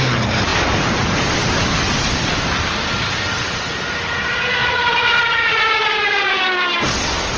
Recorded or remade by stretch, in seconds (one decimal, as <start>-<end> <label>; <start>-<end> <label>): 0.0-4.6 recorded; 4.6-6.4 remade; 6.4-7.4 recorded